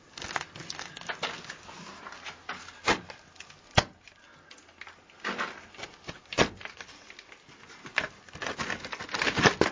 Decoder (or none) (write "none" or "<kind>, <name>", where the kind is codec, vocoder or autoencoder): none